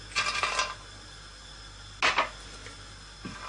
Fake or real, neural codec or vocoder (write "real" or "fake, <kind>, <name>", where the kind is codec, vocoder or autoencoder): real